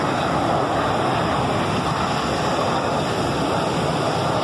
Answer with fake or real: real